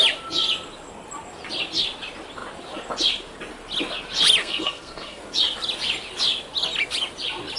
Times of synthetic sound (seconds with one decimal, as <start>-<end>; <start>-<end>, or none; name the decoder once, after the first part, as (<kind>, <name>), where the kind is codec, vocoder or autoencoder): 4.4-5.2 (codec, SNAC)